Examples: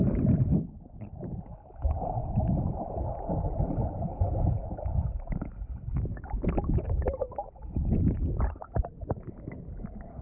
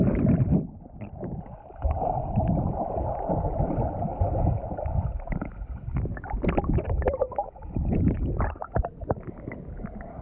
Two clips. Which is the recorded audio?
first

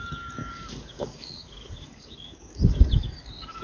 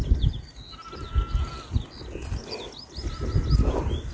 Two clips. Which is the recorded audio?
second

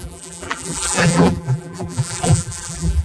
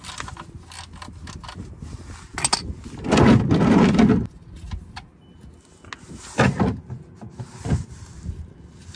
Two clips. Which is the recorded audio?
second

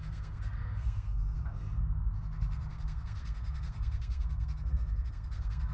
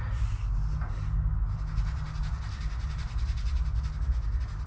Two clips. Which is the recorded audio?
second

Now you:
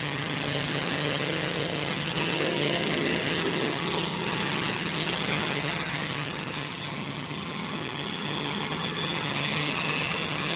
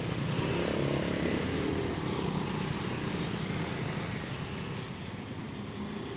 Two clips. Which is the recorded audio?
second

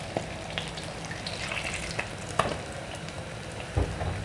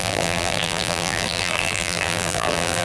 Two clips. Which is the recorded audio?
first